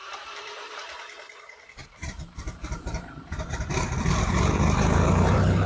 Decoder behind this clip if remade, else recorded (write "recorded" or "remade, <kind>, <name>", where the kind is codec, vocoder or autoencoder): remade, vocoder, BigVGAN v2